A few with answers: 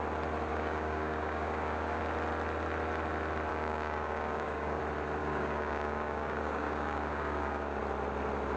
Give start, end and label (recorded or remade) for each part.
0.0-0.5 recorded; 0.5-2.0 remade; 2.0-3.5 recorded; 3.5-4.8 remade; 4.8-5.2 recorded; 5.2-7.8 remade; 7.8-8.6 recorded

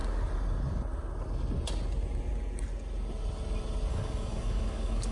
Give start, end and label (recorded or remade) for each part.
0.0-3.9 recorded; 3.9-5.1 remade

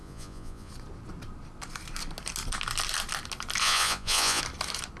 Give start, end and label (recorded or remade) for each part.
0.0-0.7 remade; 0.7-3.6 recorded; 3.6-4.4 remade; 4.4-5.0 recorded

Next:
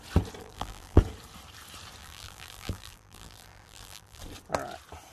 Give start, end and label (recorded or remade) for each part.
0.0-0.4 recorded; 0.4-1.0 remade; 1.0-2.0 recorded; 2.0-4.2 remade; 4.2-5.1 recorded